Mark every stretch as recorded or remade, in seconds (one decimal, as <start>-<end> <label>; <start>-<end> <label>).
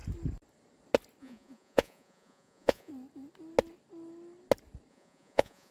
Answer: 0.0-1.2 recorded; 1.2-2.9 remade; 2.9-4.9 recorded; 4.9-5.7 remade